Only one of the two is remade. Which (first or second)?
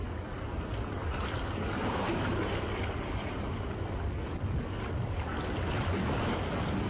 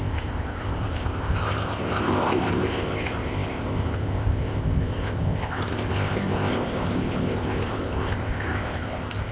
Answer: second